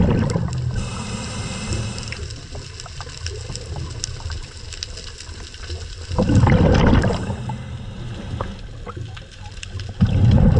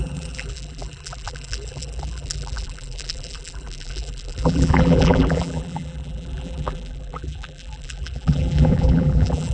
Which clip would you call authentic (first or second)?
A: first